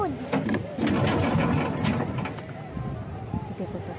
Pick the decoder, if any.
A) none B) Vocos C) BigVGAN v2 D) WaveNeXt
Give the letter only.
A